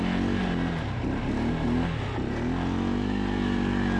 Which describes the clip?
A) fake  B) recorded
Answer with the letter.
B